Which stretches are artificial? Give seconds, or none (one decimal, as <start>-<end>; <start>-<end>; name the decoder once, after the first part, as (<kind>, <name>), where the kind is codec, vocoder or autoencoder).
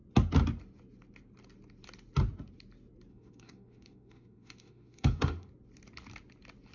3.1-5.5 (autoencoder, DAC-VAE)